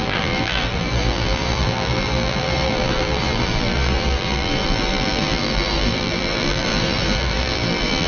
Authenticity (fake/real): fake